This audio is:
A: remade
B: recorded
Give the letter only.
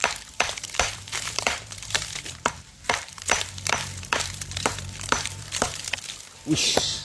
A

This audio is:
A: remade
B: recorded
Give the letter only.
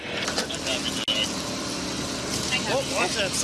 B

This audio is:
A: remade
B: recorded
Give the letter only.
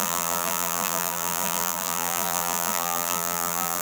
A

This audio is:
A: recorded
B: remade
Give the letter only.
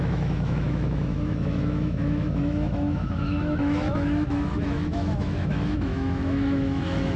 B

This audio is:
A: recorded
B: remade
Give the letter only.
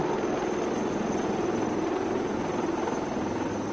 A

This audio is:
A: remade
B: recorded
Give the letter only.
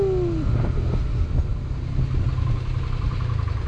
B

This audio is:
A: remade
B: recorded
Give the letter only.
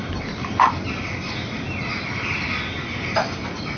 B